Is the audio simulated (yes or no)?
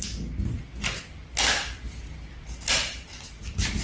no